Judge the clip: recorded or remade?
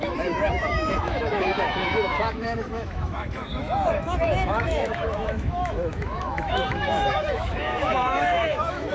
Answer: remade